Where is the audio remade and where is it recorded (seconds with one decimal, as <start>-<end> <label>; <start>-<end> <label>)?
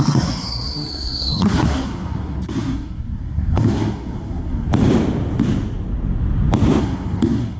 0.0-4.7 remade; 4.7-6.8 recorded; 6.8-7.6 remade